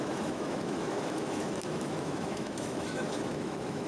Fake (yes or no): yes